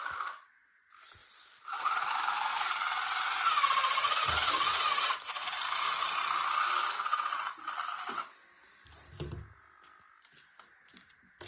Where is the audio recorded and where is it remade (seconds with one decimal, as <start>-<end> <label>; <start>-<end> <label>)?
0.0-2.5 recorded; 2.5-4.3 remade; 4.3-4.7 recorded; 4.7-5.6 remade; 5.6-11.5 recorded